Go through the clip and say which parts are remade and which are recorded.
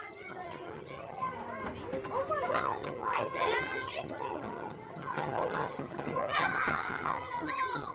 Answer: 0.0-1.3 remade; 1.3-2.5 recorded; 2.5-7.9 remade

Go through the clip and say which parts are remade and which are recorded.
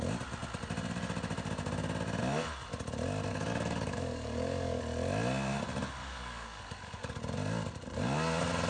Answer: 0.0-3.3 recorded; 3.3-4.8 remade; 4.8-6.0 recorded; 6.0-7.1 remade; 7.1-8.7 recorded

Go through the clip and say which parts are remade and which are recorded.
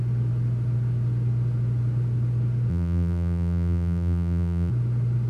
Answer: 0.0-2.7 recorded; 2.7-4.7 remade; 4.7-5.3 recorded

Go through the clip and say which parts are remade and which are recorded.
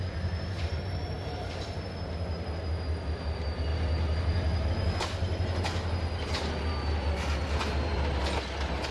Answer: 0.0-0.7 recorded; 0.7-2.6 remade; 2.6-8.9 recorded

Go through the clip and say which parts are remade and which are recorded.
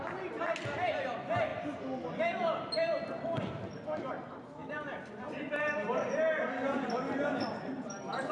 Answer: 0.0-4.6 recorded; 4.6-5.4 remade; 5.4-8.3 recorded